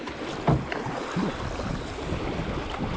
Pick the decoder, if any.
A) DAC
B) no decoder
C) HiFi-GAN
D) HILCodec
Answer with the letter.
B